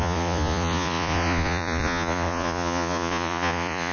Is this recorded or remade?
remade